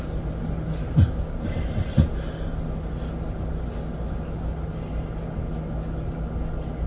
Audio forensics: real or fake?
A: real